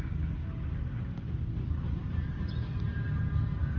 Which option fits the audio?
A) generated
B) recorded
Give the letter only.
B